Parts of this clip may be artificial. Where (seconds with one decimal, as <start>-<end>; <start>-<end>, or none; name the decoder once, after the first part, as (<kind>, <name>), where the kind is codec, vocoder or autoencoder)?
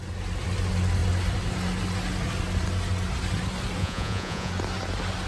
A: 3.8-4.5 (vocoder, Vocos)